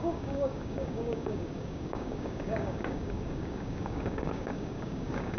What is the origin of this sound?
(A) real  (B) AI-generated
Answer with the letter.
B